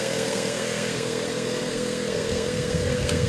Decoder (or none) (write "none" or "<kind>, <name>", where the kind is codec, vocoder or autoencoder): codec, SNAC